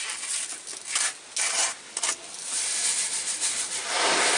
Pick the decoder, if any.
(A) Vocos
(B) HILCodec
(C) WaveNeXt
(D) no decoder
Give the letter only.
D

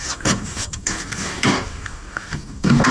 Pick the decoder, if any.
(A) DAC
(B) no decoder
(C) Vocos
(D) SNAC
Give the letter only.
A